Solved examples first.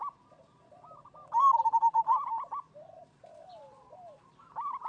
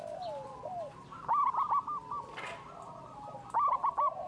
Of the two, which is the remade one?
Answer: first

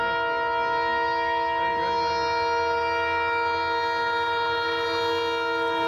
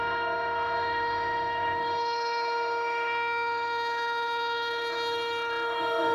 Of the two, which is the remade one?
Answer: second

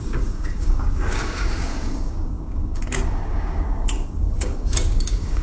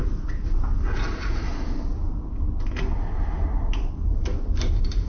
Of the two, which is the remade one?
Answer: first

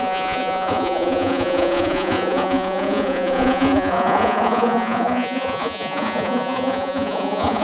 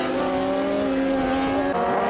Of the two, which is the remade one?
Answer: first